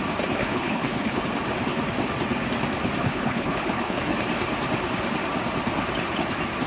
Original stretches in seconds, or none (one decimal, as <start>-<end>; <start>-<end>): 0.0-0.4; 1.2-3.0; 4.0-6.7

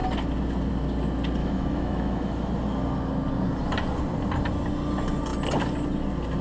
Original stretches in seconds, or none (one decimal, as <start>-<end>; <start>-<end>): 0.0-1.4; 2.5-6.4

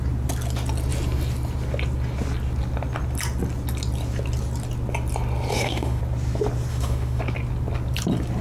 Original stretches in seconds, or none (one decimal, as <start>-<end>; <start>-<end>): 0.0-5.5; 6.0-6.7; 7.2-8.4